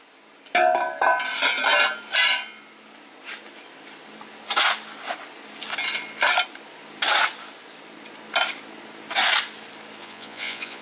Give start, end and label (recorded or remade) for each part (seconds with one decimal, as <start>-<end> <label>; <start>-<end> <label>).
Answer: 0.0-10.0 recorded; 10.0-10.8 remade